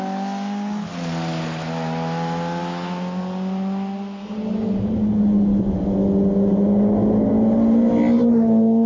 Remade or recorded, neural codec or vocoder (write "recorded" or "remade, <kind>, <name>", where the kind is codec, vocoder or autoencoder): recorded